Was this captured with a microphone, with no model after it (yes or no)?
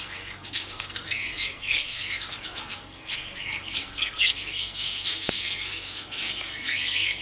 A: no